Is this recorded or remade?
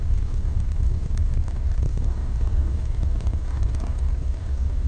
remade